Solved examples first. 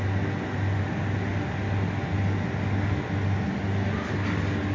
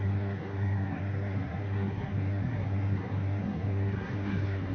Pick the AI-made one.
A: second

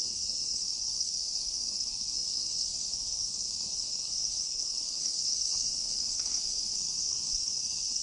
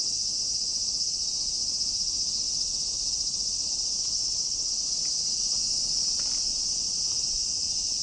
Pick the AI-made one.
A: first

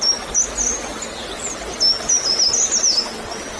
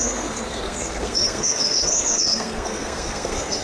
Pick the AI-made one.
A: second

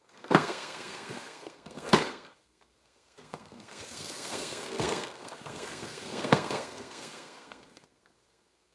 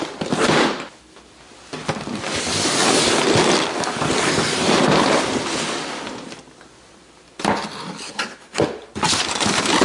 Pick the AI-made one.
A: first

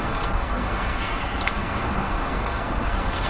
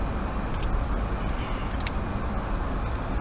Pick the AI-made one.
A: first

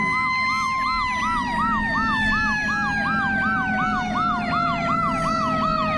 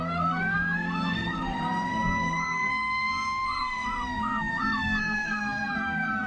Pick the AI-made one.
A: second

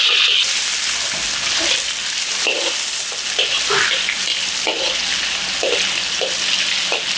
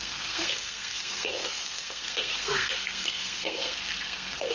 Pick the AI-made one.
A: second